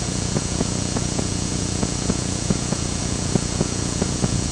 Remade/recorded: remade